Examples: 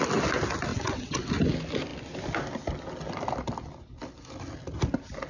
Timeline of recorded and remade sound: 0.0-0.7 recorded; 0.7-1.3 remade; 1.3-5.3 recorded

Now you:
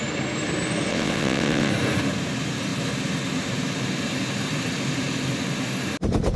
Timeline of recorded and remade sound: 0.0-0.9 recorded; 0.9-1.7 remade; 1.7-6.4 recorded

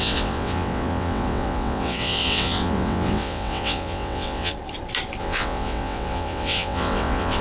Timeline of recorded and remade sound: 0.0-4.5 remade; 4.5-5.2 recorded; 5.2-7.4 remade

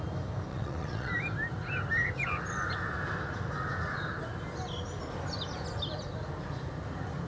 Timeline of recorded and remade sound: 0.0-0.5 recorded; 0.5-1.1 remade; 1.1-7.3 recorded